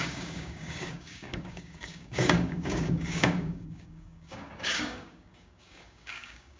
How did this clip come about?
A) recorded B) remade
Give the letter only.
B